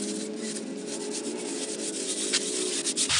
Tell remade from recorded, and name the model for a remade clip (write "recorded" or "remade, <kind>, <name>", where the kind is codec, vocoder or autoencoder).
recorded